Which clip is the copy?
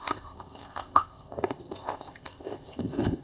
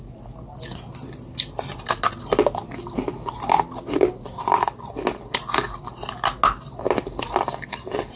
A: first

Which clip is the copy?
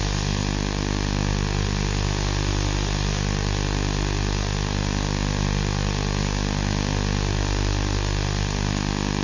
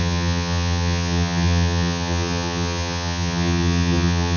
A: second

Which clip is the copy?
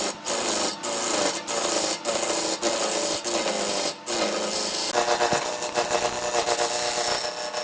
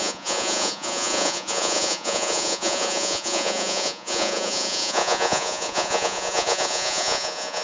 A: second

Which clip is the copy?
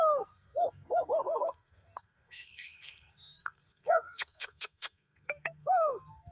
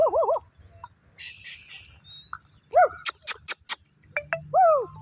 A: first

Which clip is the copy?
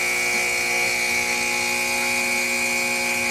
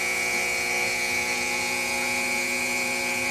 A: second